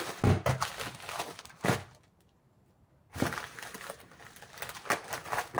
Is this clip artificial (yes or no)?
no